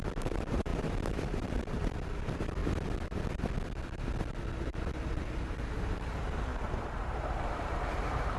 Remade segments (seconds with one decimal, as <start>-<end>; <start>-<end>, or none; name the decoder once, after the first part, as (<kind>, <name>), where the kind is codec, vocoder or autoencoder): 0.0-2.6 (vocoder, BigVGAN v2); 5.1-8.4